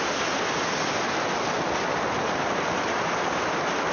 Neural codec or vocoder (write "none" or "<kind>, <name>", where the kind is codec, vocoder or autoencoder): none